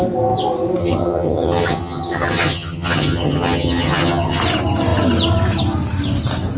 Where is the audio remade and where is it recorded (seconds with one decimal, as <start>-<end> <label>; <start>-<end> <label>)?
0.0-0.8 recorded; 0.8-4.4 remade; 4.4-6.6 recorded